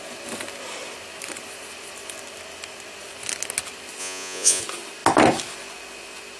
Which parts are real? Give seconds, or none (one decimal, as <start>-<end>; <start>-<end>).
0.0-4.0; 4.6-6.4